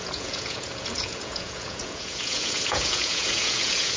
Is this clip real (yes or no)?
no